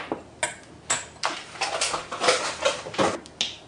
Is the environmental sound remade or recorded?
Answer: recorded